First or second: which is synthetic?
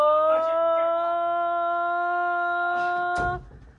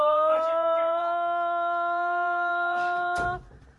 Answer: second